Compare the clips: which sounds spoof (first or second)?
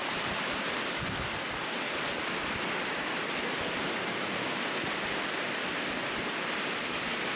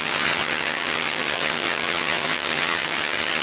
second